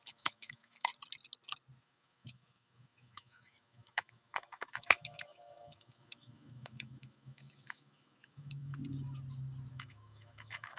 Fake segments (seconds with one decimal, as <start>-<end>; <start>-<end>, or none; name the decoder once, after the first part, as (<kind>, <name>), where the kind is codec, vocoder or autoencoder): 0.0-0.9 (autoencoder, DAC-VAE); 1.8-8.8; 9.7-10.8